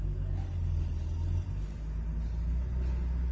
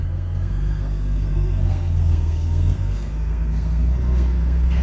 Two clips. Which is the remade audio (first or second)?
second